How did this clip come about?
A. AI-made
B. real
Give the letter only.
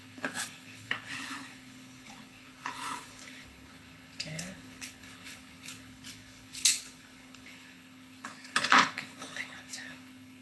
A